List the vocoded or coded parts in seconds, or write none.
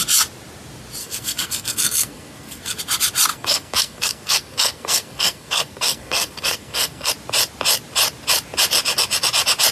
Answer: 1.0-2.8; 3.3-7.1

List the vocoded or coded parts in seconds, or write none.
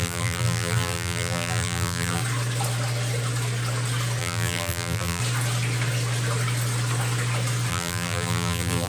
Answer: 0.0-2.2; 4.2-5.2; 7.7-8.9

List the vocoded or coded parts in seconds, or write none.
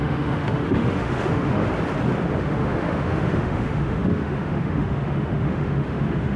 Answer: 0.0-1.6; 2.4-6.4